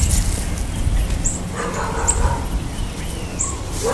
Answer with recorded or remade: recorded